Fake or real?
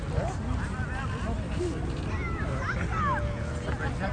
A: real